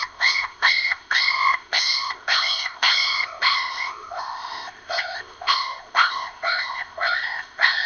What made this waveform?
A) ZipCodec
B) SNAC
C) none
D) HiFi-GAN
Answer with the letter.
A